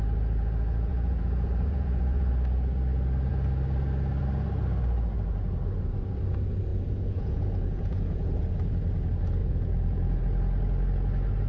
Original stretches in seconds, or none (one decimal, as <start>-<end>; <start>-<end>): 0.0-0.9; 2.3-6.7; 8.5-9.4; 10.2-11.5